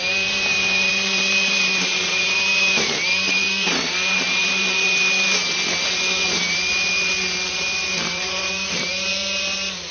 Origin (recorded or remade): remade